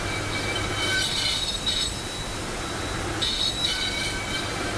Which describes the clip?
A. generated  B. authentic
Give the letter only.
A